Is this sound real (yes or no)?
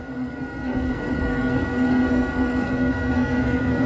no